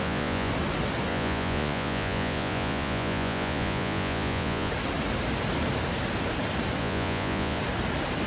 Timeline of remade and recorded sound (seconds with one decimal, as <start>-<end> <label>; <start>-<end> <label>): 0.0-0.5 remade; 0.5-1.1 recorded; 1.1-4.7 remade; 4.7-6.8 recorded; 6.8-7.6 remade; 7.6-8.3 recorded

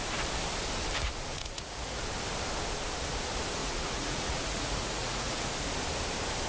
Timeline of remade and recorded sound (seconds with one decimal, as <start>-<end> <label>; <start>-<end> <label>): 0.0-1.3 recorded; 1.3-2.0 remade; 2.0-3.6 recorded; 3.6-5.5 remade; 5.5-6.5 recorded

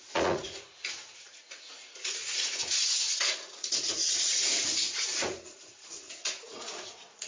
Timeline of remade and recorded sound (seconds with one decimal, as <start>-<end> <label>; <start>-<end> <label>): 0.0-7.3 remade

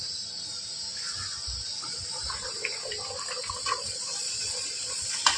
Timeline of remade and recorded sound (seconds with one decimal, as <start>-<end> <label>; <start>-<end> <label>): 0.0-3.6 recorded; 3.6-5.0 remade; 5.0-5.4 recorded

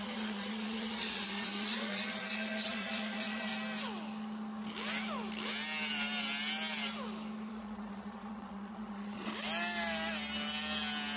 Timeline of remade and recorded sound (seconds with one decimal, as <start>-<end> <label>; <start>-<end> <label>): 0.0-3.5 remade; 3.5-7.5 recorded; 7.5-9.3 remade; 9.3-11.2 recorded